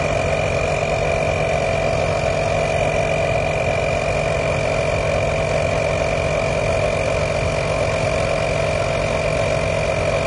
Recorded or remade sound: recorded